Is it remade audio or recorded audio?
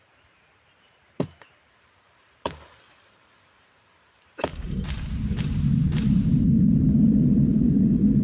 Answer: remade